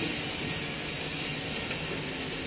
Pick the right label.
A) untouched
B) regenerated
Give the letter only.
A